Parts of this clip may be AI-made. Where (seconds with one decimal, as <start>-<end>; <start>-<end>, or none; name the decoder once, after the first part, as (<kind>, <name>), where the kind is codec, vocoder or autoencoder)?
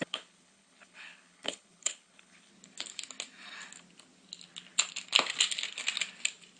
0.0-2.5 (codec, HILCodec)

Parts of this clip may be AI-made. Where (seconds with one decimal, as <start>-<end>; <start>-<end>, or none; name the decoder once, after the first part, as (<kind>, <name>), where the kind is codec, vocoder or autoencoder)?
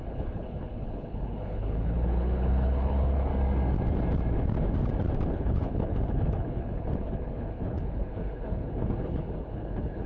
0.0-3.3 (codec, HILCodec); 5.3-10.1